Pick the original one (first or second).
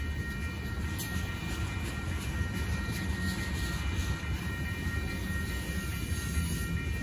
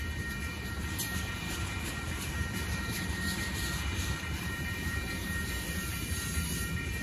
first